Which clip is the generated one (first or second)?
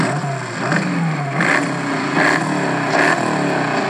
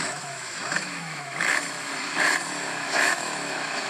second